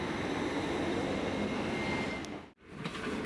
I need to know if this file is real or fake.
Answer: real